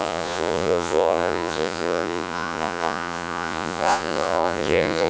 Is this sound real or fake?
fake